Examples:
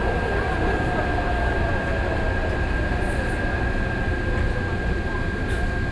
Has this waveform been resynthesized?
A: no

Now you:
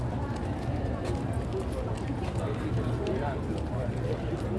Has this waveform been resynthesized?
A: no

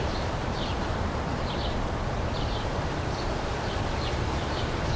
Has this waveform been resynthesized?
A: yes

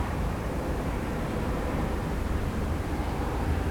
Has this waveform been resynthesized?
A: yes